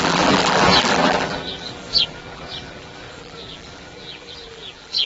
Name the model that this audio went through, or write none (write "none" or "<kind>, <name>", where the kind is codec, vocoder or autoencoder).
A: vocoder, BigVGAN v2